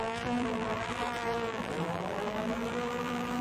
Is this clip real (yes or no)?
no